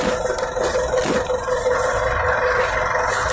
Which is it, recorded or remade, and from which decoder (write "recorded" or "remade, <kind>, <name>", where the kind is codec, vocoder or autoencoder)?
recorded